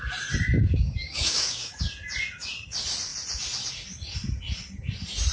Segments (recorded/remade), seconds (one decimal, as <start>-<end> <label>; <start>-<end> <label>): 0.0-0.7 recorded; 0.7-1.7 remade; 1.7-5.3 recorded